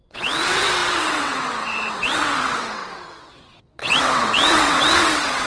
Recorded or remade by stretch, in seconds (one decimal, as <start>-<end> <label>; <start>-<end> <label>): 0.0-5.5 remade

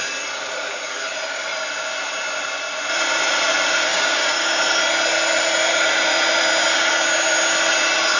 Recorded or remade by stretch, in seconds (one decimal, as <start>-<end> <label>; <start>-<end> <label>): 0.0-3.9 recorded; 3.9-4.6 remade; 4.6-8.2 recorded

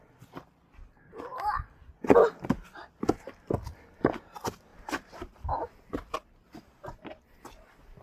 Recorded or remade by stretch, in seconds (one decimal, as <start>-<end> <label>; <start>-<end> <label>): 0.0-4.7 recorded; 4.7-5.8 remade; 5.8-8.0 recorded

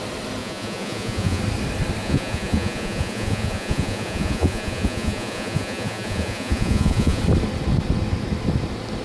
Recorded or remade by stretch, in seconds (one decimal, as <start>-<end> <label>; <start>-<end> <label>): 0.0-0.4 recorded; 0.4-1.4 remade; 1.4-2.0 recorded; 2.0-7.2 remade; 7.2-9.0 recorded

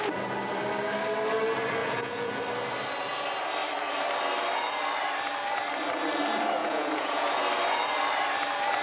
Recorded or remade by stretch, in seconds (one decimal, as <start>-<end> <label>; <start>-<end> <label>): 0.0-1.8 recorded; 1.8-2.4 remade; 2.4-6.6 recorded; 6.6-7.4 remade; 7.4-8.8 recorded